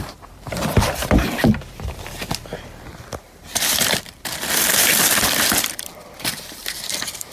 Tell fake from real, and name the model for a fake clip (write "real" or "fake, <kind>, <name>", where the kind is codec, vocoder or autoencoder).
fake, vocoder, BigVGAN v2